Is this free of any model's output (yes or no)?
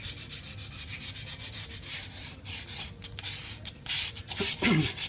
yes